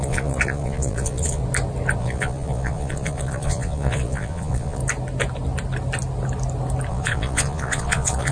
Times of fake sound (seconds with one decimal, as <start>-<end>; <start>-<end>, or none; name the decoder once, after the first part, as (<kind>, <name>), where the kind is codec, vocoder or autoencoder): 0.0-1.4 (vocoder, Vocos); 2.0-4.8; 6.9-8.3